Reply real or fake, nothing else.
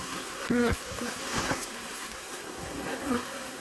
fake